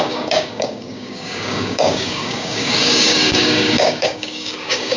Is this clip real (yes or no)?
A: no